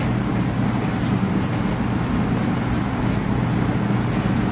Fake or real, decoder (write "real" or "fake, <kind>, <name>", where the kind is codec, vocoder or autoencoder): real